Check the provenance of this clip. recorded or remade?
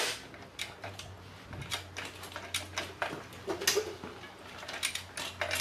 recorded